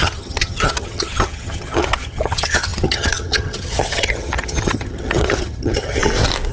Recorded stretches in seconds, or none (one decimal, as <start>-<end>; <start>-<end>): 6.0-6.5